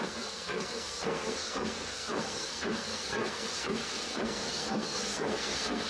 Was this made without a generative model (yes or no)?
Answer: no